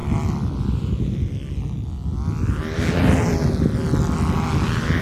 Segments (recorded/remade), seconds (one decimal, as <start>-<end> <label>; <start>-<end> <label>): 0.0-5.0 recorded